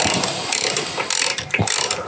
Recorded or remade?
recorded